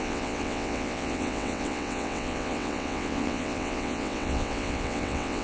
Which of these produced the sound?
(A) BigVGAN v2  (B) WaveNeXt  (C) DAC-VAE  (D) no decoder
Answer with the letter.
B